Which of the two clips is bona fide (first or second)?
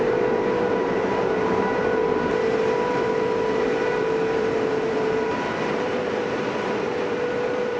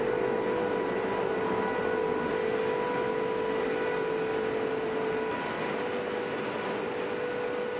second